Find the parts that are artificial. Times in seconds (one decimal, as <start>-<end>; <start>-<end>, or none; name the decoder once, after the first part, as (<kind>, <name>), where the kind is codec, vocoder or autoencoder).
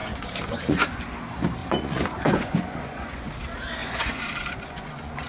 0.0-1.0 (vocoder, Vocos); 1.6-3.3; 3.8-5.3